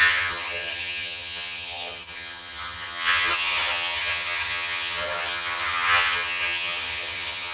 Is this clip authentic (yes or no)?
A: no